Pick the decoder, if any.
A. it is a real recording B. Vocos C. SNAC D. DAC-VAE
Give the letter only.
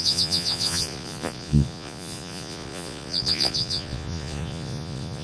B